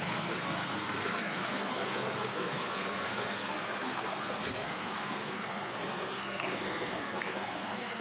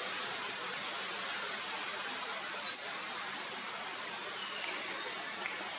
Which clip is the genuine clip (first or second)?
second